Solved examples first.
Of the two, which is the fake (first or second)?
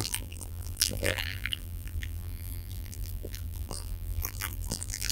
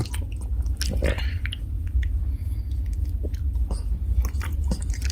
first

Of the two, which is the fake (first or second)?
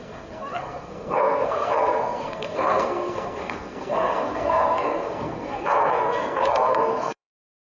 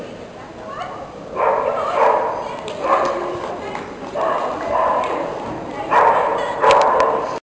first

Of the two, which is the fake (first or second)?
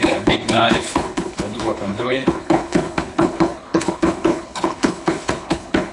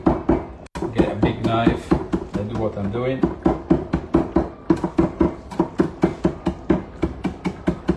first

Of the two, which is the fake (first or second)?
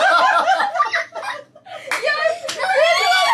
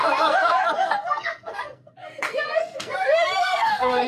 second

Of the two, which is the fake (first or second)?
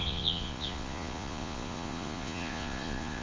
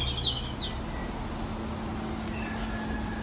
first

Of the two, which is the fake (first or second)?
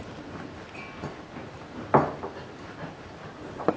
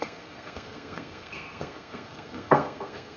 second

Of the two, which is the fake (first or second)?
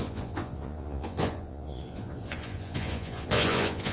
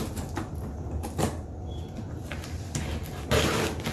first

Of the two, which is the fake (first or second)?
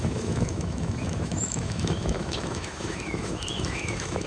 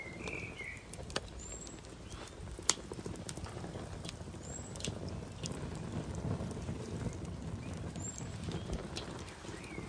first